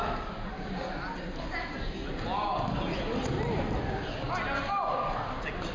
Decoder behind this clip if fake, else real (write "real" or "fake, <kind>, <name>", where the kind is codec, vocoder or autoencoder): real